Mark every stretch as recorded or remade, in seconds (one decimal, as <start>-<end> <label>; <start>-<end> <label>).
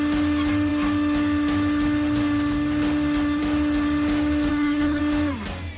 0.0-4.5 recorded; 4.5-5.0 remade; 5.0-5.8 recorded